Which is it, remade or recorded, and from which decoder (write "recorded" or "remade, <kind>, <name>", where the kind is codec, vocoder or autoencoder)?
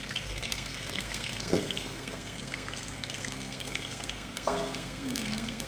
remade, codec, SNAC